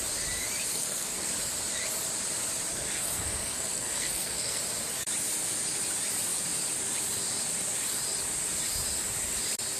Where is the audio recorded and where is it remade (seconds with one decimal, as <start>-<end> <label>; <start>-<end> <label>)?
0.0-0.7 recorded; 0.7-1.3 remade; 1.3-2.7 recorded; 2.7-4.6 remade; 4.6-9.8 recorded